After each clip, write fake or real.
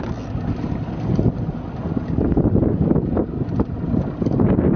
real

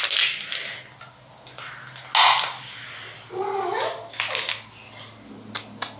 real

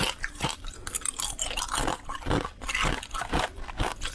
real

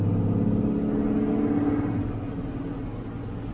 real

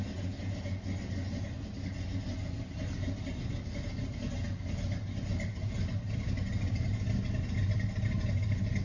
real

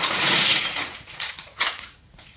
fake